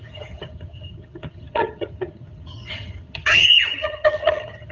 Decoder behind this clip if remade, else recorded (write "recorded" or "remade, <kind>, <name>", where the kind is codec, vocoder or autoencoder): remade, vocoder, HiFi-GAN